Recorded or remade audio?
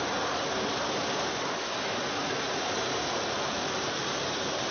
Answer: recorded